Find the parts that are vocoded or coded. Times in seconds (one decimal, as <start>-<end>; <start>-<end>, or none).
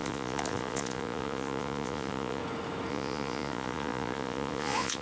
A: 0.0-2.4; 2.9-5.0